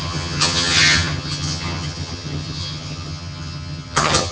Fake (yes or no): yes